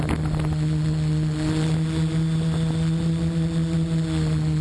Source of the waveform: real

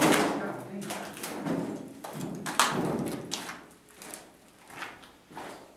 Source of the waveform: real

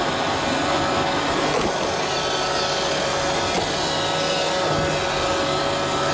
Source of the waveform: real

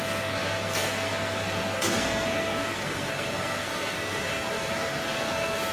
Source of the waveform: fake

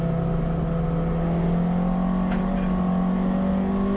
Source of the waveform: real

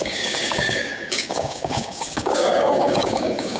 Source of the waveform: fake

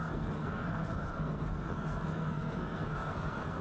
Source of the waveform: fake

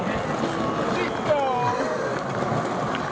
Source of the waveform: real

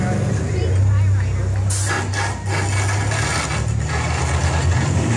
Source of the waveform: real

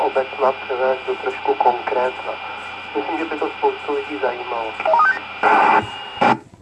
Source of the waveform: real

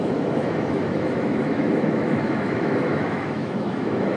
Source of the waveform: fake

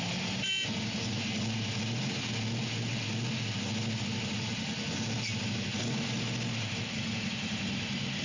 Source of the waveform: real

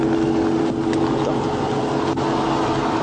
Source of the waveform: real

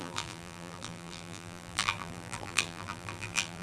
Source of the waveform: fake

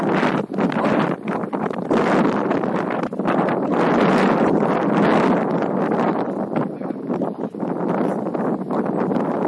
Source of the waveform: real